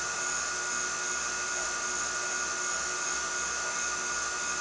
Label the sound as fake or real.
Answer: fake